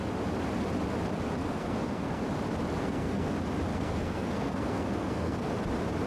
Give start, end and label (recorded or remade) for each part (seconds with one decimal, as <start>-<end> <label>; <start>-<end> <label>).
0.0-1.4 recorded; 1.4-2.2 remade; 2.2-2.8 recorded; 2.8-3.3 remade; 3.3-3.7 recorded; 3.7-5.5 remade; 5.5-6.1 recorded